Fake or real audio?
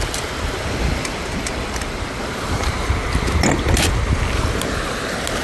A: real